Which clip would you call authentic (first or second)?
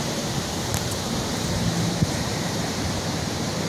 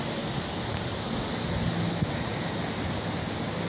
second